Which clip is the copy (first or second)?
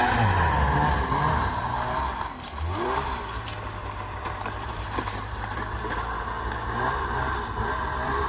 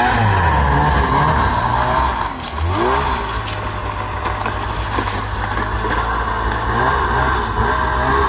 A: first